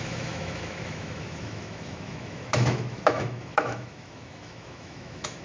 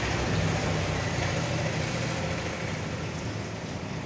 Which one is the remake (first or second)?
first